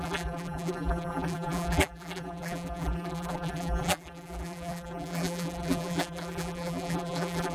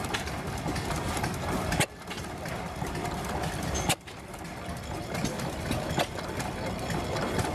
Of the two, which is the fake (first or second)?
first